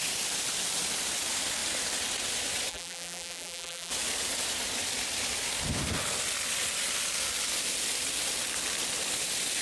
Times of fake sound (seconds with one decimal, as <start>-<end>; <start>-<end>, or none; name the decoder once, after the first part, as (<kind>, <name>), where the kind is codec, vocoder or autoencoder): 2.7-3.9 (vocoder, BigVGAN v2)